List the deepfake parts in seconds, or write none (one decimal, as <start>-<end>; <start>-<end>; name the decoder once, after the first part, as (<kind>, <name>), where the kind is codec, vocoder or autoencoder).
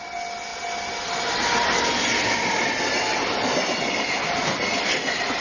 none